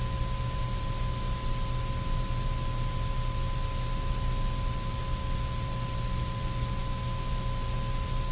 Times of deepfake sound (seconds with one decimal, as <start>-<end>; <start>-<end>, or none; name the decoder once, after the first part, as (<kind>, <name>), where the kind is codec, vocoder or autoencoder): none